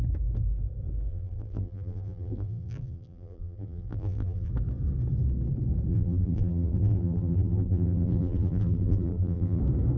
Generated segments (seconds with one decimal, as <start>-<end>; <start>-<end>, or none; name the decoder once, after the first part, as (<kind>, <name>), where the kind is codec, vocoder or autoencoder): 1.1-4.5 (vocoder, BigVGAN v2); 5.9-9.6